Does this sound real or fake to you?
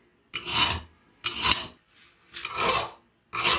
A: real